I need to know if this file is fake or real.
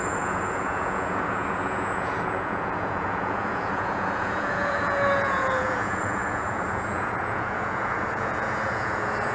fake